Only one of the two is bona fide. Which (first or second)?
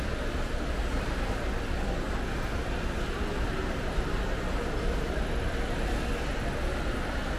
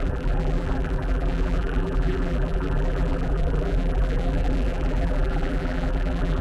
first